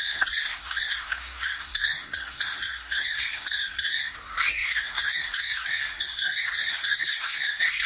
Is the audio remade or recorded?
remade